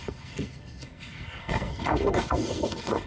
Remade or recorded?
remade